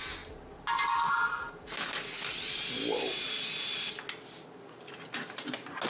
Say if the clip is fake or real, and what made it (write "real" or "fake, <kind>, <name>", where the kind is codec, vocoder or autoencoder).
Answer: real